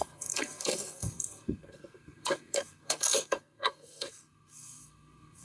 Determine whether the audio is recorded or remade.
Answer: remade